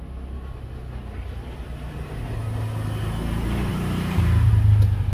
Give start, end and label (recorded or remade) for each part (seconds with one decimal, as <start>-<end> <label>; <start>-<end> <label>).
0.0-3.7 recorded; 3.7-4.5 remade; 4.5-5.1 recorded

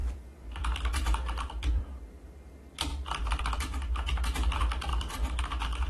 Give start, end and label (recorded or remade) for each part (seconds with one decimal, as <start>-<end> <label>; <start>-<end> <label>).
0.0-2.5 remade; 2.5-4.9 recorded; 4.9-5.4 remade; 5.4-5.9 recorded

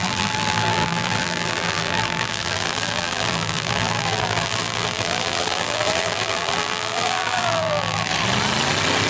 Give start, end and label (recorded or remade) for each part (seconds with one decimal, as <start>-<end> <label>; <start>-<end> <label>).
0.0-8.1 remade; 8.1-9.1 recorded

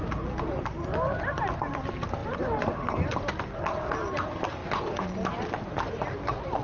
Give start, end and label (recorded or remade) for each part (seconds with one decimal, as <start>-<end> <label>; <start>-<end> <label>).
0.0-1.4 remade; 1.4-2.2 recorded; 2.2-3.1 remade; 3.1-6.6 recorded